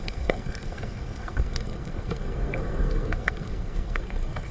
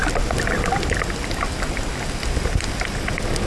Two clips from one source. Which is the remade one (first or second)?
first